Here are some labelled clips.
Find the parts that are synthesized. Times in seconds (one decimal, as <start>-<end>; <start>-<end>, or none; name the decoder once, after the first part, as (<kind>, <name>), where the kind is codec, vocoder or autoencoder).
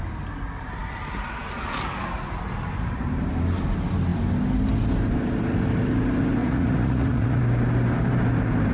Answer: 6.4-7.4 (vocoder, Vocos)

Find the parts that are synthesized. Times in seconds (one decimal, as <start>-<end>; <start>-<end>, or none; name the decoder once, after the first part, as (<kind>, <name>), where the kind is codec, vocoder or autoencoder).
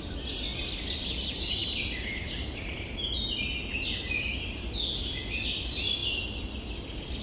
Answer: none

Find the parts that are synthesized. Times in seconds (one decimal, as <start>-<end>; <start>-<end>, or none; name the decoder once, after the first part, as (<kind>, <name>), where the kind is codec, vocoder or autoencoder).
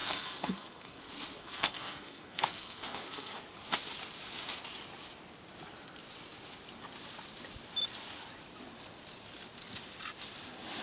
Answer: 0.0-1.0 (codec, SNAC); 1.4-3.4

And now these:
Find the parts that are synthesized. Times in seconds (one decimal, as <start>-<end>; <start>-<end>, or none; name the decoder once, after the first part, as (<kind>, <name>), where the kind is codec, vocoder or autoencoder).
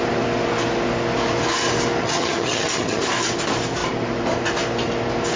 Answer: 2.0-3.0 (vocoder, HiFi-GAN)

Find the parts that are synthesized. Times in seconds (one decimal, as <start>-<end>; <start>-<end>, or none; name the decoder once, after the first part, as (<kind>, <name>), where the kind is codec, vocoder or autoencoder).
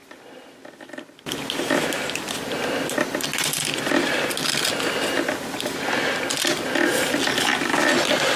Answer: none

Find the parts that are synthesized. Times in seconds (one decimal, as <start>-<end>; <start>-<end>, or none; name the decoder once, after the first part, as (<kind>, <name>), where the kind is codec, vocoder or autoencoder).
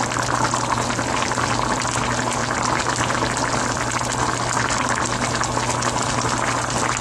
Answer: none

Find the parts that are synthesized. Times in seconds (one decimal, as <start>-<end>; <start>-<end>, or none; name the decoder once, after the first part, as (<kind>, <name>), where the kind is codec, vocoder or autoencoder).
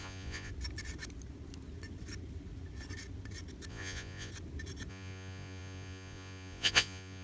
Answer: 0.0-0.5 (vocoder, Vocos); 3.7-4.3; 4.9-7.2